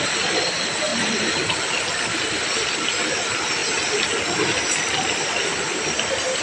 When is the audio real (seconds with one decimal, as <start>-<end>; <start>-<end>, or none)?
0.0-6.4

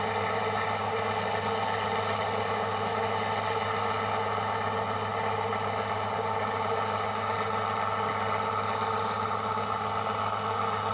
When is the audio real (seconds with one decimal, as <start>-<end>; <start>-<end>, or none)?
0.0-10.9

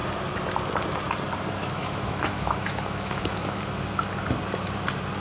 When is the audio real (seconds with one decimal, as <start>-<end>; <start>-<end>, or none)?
0.0-1.6; 3.6-5.2

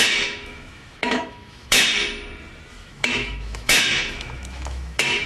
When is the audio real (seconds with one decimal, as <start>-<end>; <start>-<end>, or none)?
1.9-2.7

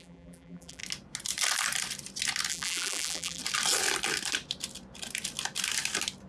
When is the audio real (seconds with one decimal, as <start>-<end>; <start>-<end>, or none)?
0.8-2.5; 3.4-6.3

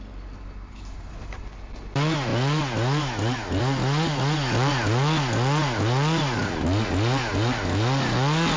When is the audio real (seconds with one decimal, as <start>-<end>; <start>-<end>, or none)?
0.0-8.6

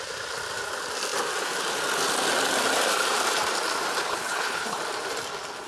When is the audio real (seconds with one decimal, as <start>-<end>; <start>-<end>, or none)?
0.0-4.0; 4.8-5.7

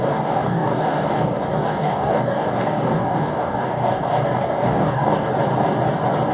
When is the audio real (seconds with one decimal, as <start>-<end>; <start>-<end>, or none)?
5.3-6.3